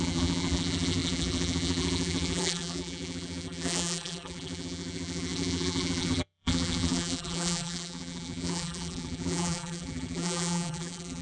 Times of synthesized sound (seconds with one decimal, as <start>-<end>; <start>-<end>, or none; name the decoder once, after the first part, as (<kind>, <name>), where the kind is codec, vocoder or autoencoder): 0.0-11.2 (vocoder, BigVGAN v2)